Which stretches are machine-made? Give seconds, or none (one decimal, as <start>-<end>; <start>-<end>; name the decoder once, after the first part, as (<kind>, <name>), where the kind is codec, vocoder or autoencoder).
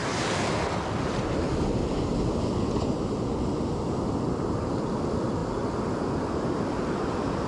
none